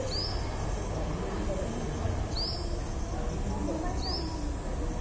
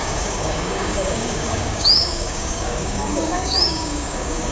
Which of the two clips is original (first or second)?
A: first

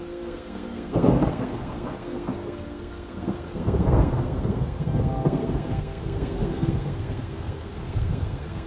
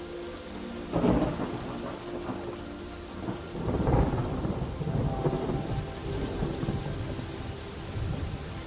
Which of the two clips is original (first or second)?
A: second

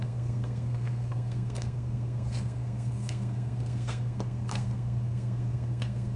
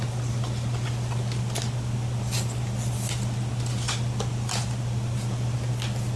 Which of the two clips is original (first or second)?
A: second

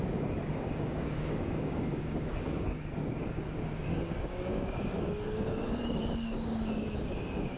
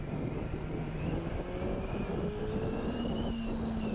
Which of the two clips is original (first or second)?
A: second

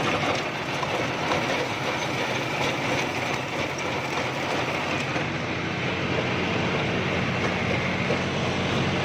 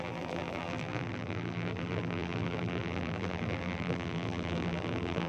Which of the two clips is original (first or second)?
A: first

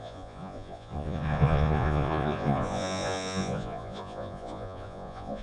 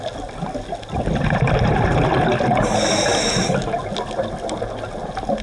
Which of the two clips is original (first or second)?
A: second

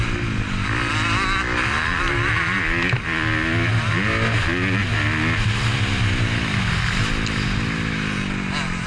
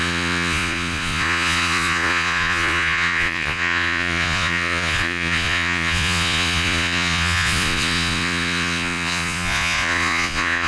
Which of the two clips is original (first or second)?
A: first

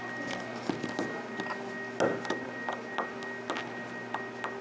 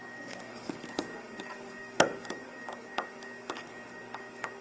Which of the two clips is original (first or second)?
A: first